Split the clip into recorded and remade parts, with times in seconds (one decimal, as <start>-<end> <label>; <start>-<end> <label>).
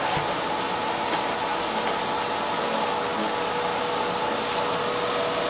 0.0-5.5 recorded